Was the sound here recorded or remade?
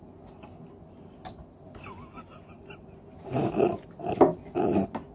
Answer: recorded